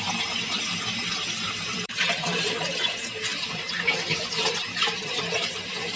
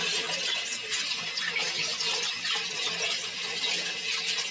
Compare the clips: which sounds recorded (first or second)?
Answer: second